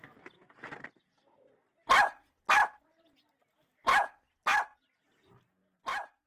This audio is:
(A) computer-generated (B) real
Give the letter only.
B